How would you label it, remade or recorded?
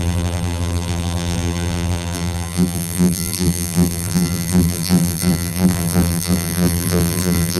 remade